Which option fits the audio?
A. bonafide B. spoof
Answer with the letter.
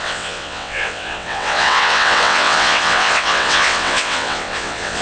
B